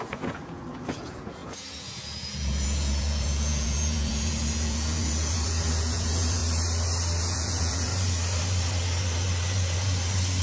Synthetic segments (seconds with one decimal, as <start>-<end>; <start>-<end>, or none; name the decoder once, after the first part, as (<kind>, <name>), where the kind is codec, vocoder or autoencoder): 0.0-6.4 (vocoder, Vocos); 7.2-7.9